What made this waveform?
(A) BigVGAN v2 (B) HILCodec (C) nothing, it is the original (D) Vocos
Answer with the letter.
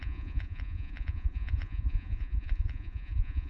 D